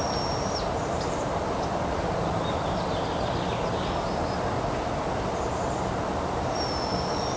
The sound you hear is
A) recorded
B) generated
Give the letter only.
A